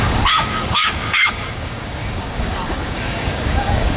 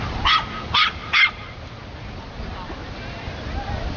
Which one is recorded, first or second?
second